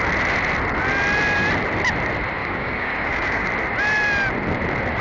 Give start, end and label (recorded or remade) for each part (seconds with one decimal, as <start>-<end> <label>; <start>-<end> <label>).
0.0-2.4 recorded; 2.4-3.5 remade; 3.5-5.0 recorded